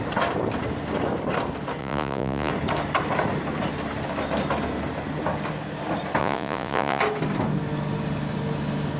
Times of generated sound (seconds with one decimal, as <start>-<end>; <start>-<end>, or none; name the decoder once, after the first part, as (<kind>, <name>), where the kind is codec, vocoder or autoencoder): 1.8-2.5 (vocoder, Vocos); 6.2-7.0